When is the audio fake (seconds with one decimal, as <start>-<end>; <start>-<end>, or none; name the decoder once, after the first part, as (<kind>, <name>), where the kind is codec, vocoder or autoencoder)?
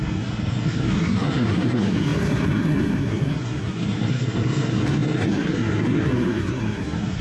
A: 0.0-7.2 (codec, SNAC)